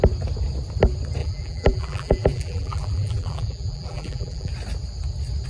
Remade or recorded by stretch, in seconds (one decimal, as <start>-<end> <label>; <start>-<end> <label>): 0.0-1.2 recorded; 1.2-4.5 remade; 4.5-5.5 recorded